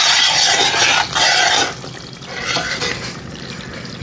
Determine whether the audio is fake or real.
real